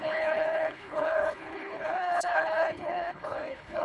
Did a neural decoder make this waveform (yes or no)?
yes